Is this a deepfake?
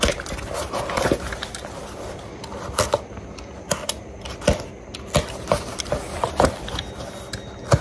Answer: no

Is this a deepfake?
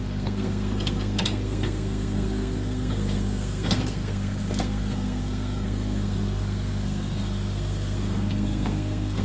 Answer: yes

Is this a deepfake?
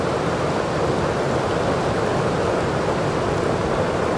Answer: no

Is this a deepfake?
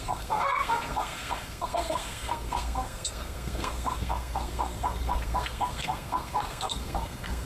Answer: yes